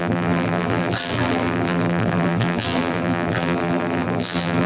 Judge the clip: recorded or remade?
remade